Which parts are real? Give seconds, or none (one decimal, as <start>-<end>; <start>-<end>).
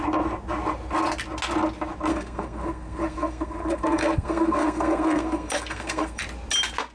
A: 0.0-2.1; 6.2-6.9